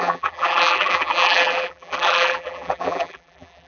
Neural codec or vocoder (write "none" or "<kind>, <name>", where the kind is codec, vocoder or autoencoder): vocoder, BigVGAN v2